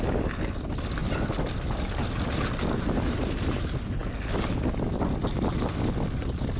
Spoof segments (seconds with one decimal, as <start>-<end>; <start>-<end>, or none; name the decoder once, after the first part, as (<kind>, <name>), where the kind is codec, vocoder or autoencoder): none